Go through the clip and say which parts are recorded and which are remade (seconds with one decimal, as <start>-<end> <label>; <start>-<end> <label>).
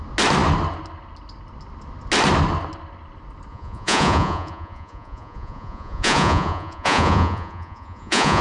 0.0-3.5 recorded; 3.5-8.4 remade